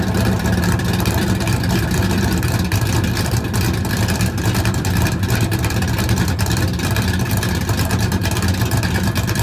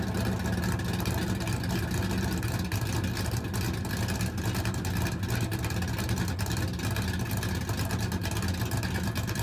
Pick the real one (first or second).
second